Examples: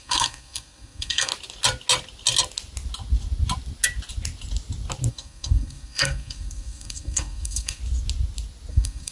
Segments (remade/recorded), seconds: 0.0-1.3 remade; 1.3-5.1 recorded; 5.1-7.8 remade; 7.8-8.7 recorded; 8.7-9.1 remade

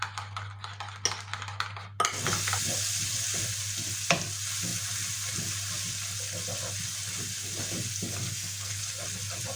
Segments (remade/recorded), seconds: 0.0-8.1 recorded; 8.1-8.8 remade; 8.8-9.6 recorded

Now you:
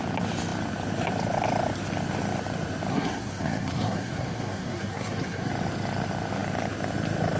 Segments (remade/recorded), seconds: 0.0-2.9 recorded; 2.9-5.5 remade; 5.5-7.4 recorded